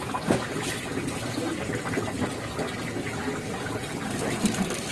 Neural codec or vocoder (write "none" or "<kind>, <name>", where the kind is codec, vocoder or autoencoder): none